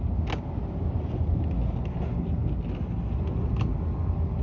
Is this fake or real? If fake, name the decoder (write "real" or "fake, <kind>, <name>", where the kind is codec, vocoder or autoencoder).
real